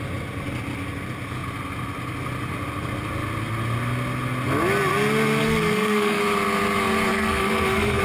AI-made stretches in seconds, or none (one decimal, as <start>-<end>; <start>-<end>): 5.4-6.2; 7.1-8.0